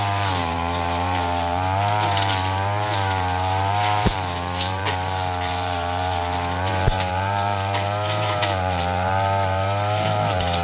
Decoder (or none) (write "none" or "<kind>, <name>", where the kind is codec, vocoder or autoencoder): vocoder, BigVGAN v2